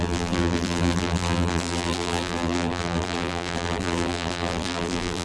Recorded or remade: remade